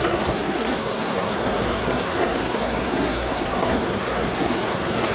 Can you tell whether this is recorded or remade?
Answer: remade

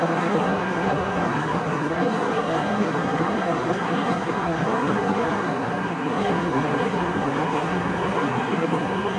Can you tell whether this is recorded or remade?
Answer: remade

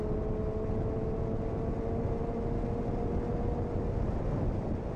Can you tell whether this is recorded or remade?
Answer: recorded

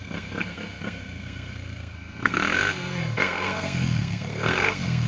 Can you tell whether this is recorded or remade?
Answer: remade